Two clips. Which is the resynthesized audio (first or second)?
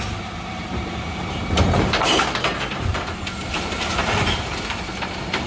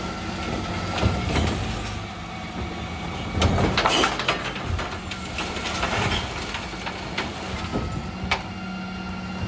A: first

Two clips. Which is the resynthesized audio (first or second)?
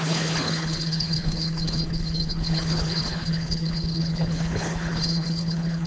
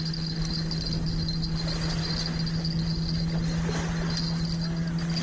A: first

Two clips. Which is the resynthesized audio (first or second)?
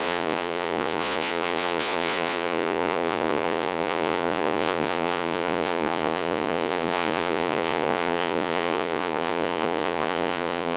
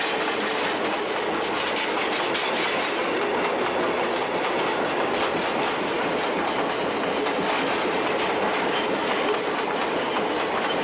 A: first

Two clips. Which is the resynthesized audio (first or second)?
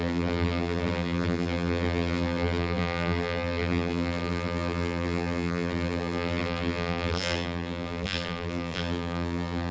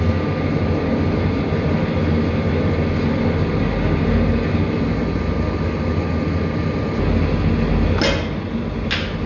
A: first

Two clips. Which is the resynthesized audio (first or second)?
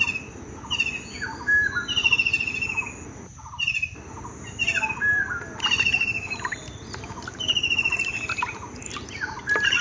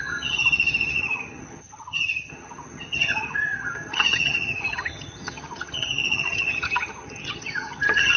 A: second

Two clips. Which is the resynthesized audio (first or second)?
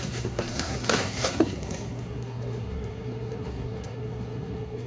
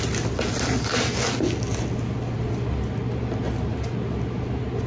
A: first